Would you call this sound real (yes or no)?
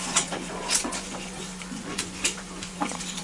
no